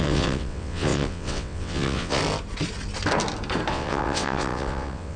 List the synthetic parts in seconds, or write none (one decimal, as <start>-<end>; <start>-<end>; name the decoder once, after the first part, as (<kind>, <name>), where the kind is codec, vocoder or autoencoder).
0.0-2.2 (vocoder, WaveNeXt); 3.7-5.2